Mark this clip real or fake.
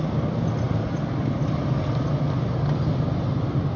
real